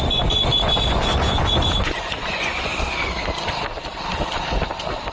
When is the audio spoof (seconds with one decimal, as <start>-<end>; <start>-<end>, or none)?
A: 0.0-2.7